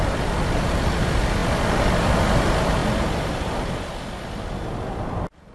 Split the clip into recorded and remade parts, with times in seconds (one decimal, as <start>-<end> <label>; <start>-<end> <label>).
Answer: 0.0-5.5 recorded